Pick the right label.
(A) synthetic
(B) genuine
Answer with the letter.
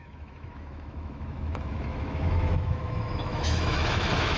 A